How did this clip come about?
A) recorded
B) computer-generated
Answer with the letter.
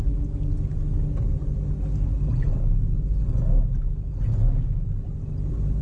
A